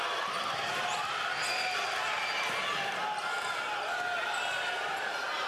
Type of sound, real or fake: real